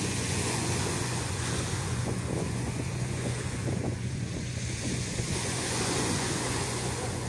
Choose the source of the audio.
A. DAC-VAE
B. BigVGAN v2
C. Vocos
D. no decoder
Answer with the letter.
C